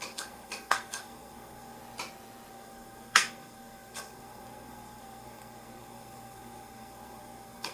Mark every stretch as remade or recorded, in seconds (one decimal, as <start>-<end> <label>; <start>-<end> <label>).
0.0-1.8 remade; 1.8-2.5 recorded; 2.5-7.7 remade

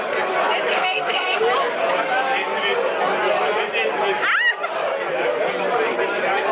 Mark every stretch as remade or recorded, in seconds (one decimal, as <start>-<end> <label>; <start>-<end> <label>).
0.0-0.7 recorded; 0.7-1.4 remade; 1.4-6.5 recorded

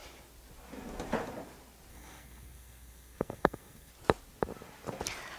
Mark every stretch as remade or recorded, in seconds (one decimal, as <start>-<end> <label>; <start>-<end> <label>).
0.0-1.9 recorded; 1.9-3.9 remade; 3.9-5.4 recorded